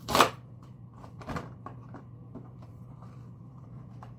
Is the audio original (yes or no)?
no